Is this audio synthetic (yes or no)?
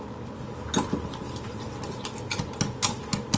no